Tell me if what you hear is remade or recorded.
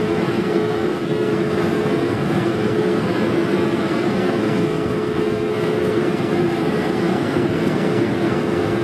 remade